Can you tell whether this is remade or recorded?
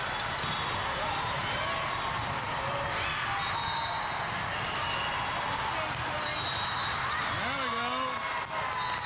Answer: recorded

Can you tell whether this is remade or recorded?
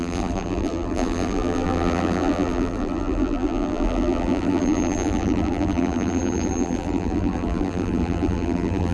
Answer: remade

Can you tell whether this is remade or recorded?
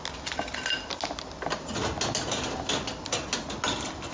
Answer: recorded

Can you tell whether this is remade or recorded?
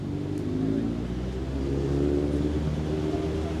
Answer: recorded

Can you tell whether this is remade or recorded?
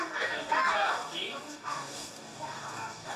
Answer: remade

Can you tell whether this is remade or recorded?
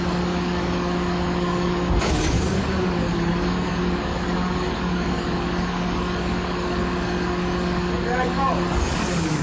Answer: remade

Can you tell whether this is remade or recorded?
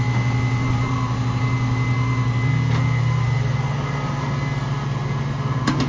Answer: recorded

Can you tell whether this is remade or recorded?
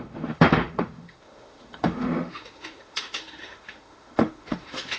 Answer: remade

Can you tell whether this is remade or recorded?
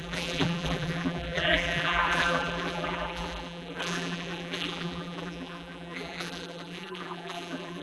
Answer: remade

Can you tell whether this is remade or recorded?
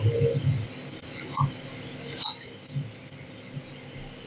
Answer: recorded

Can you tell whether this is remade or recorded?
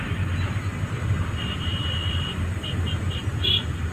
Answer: recorded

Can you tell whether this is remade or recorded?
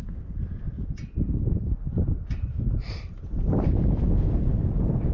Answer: recorded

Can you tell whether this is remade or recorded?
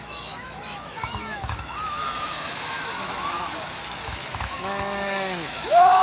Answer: remade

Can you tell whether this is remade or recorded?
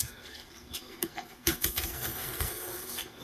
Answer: remade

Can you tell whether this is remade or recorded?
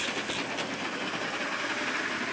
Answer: recorded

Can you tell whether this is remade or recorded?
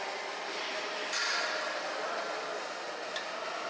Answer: recorded